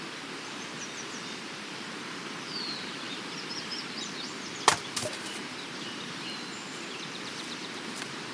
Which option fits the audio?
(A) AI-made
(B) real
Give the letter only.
A